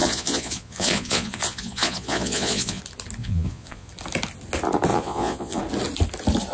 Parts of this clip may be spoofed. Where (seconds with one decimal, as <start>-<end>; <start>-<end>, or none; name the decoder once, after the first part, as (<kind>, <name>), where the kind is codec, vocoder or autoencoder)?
0.0-2.8 (vocoder, Vocos); 3.2-3.9; 4.9-5.6